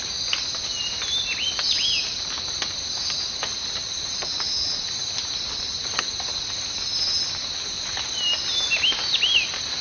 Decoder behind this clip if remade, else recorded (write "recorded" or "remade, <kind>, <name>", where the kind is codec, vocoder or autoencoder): recorded